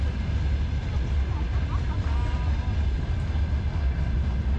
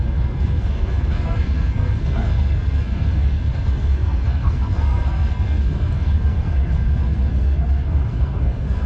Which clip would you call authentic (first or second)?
first